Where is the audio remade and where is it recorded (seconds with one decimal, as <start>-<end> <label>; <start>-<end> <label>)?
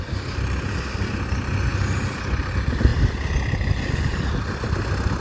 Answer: 0.0-5.2 recorded